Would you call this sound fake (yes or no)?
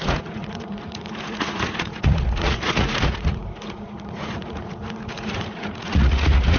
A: yes